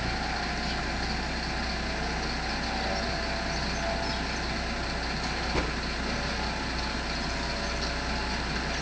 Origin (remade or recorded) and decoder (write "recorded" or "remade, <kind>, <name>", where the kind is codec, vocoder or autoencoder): recorded